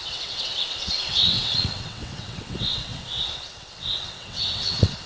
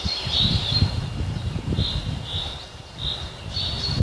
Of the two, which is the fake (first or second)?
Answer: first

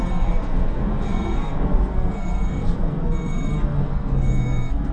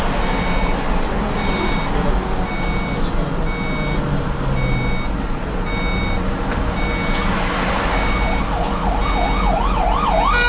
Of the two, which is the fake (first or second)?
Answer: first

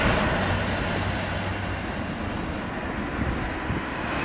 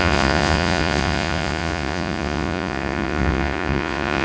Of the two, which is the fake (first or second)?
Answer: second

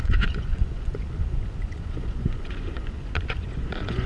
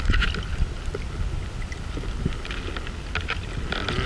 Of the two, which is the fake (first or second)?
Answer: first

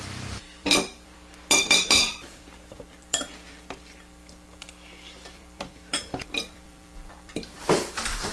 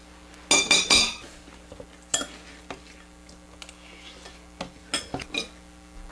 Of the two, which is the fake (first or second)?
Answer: first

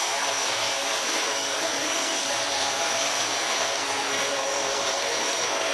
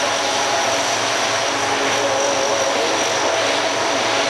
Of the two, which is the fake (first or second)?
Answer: first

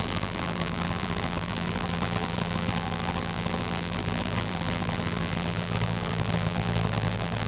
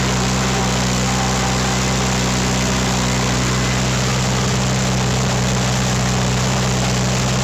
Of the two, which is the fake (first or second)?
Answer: first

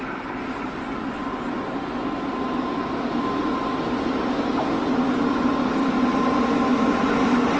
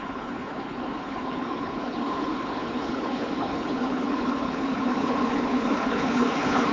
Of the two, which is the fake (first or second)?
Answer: second